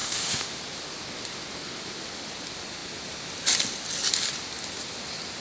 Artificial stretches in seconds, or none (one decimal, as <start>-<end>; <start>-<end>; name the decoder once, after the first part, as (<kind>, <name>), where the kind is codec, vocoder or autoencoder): 0.0-0.6 (autoencoder, DAC-VAE)